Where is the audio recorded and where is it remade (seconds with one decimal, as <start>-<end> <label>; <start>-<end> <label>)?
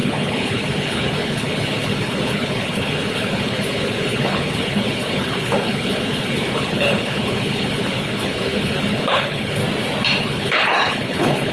0.0-9.6 remade; 9.6-10.2 recorded; 10.2-11.5 remade